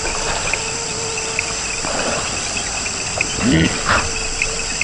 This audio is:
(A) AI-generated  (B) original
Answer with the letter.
B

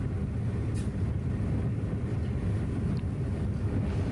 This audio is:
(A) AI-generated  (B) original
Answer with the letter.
B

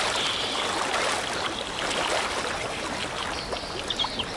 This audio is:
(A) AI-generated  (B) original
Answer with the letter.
B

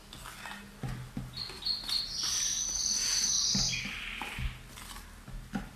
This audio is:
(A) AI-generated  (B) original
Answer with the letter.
B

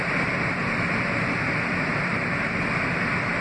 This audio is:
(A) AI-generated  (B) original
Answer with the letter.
B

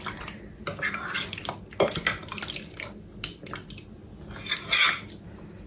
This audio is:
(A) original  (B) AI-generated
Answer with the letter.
A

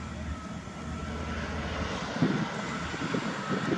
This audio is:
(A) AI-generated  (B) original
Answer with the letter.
B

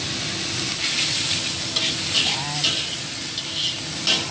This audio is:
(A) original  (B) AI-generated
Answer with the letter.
A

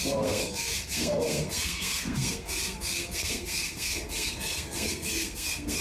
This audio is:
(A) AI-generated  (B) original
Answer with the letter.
A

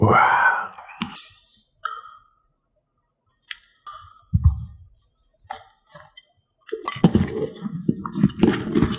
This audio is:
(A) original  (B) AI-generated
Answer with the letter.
A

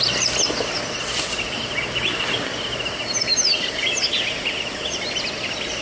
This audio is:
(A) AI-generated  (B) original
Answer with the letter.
B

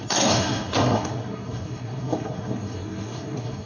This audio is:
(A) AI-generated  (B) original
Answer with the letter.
A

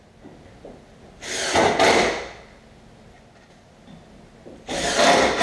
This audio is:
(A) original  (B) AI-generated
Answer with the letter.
A